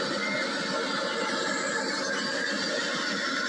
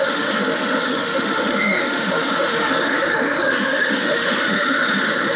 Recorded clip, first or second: first